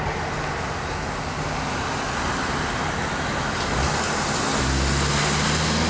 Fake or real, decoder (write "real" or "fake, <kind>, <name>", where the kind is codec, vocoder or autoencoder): real